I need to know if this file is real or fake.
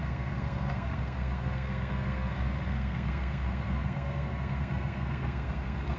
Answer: fake